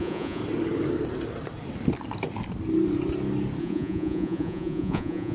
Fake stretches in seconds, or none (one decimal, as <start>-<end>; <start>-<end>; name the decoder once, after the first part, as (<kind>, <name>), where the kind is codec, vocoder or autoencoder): 0.0-0.4 (vocoder, Vocos); 3.6-5.3